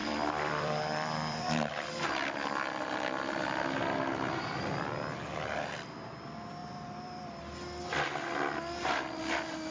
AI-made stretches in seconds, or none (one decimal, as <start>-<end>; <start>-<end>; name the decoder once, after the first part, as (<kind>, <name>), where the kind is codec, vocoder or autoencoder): 0.0-1.9 (vocoder, BigVGAN v2); 6.6-7.4